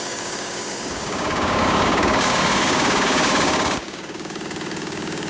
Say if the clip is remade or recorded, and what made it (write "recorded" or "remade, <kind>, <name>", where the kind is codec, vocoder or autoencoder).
remade, codec, DAC